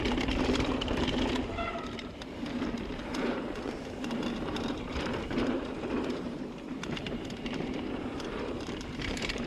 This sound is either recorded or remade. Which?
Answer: remade